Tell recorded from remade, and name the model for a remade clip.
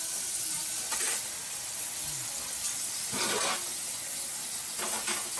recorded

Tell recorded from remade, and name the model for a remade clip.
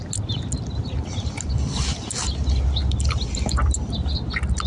recorded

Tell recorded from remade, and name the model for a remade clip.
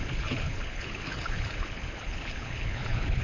remade, codec, HILCodec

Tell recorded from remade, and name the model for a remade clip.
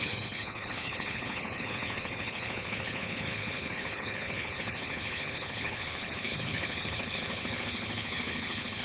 remade, codec, HILCodec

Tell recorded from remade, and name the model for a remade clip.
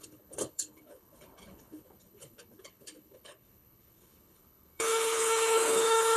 remade, codec, HILCodec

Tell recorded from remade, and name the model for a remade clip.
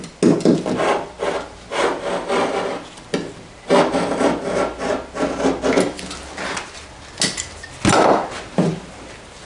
recorded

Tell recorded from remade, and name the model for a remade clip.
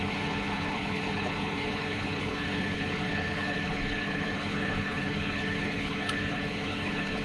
remade, codec, HILCodec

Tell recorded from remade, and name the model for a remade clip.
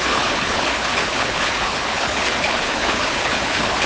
remade, codec, HILCodec